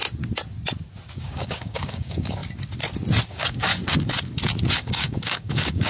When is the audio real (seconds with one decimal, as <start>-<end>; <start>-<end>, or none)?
0.0-1.2; 2.4-3.3; 3.7-4.7